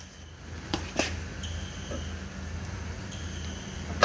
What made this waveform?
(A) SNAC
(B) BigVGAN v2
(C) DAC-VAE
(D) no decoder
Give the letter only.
D